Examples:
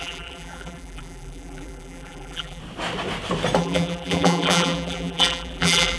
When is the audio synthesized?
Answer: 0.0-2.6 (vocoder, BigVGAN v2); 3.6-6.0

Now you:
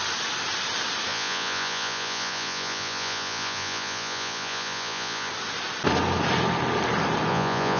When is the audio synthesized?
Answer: 1.1-5.3 (vocoder, Vocos); 7.3-7.8

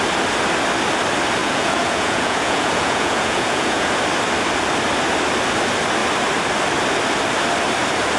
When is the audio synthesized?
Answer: 1.4-3.9 (vocoder, Vocos)